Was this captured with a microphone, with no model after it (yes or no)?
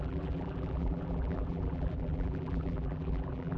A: no